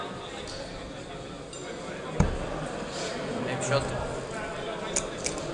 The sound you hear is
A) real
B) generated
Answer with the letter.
A